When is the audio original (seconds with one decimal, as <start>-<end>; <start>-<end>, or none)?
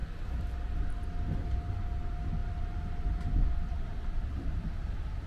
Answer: 0.0-5.3